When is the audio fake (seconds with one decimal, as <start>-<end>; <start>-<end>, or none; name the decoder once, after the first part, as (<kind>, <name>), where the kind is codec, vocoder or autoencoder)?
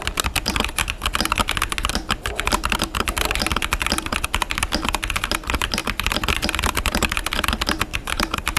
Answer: 7.9-8.6 (vocoder, BigVGAN v2)